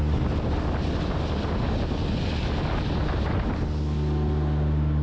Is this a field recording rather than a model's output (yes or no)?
yes